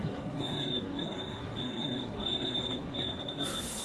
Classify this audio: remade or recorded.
remade